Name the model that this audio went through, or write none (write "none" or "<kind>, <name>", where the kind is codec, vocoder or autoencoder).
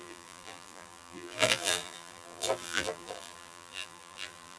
vocoder, BigVGAN v2